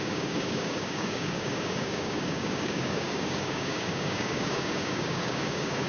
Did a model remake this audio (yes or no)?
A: yes